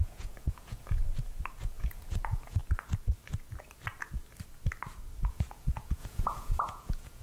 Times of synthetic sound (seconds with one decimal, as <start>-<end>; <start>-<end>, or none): 0.0-1.0; 1.6-2.6; 5.3-7.2